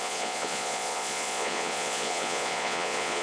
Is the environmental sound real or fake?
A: fake